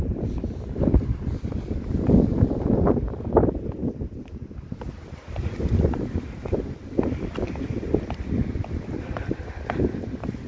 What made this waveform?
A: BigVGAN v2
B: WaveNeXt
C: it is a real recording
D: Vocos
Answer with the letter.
A